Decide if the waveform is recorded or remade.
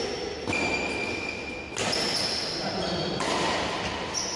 recorded